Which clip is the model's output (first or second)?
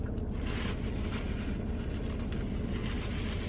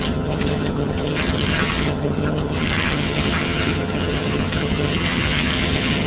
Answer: second